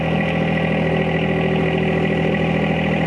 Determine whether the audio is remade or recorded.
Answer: recorded